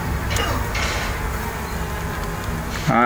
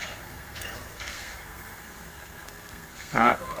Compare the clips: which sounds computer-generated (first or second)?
second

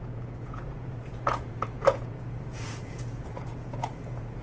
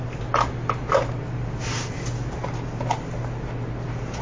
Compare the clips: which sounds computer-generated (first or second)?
first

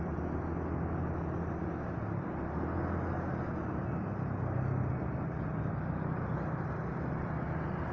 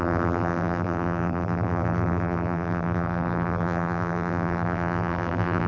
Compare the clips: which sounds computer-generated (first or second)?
second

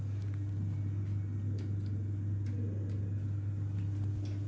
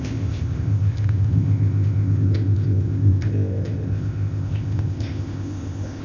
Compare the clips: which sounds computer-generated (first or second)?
second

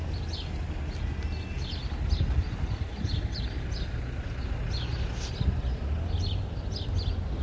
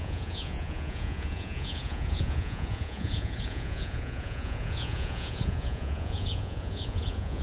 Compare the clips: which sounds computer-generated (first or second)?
second